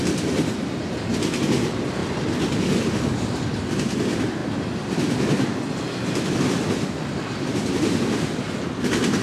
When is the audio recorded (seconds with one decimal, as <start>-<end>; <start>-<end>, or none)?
2.0-3.0